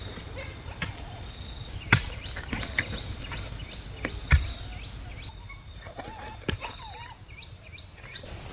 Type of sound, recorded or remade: recorded